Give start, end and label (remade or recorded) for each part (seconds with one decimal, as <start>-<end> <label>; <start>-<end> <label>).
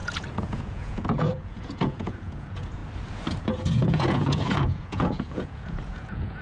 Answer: 0.0-2.8 remade; 2.8-3.4 recorded; 3.4-6.4 remade